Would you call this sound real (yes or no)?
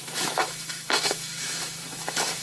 no